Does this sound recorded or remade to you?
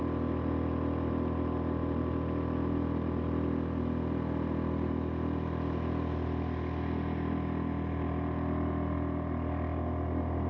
recorded